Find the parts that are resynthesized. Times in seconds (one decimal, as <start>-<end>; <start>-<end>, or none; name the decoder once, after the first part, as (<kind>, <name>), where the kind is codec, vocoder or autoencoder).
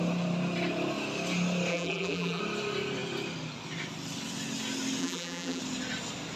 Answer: 1.7-2.4 (vocoder, BigVGAN v2); 5.0-5.6